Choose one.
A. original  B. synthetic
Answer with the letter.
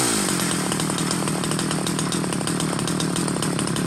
A